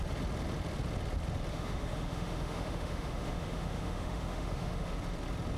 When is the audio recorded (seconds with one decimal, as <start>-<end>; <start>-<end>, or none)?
0.0-1.5; 4.9-5.6